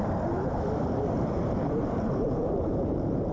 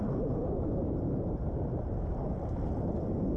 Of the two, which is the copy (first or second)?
first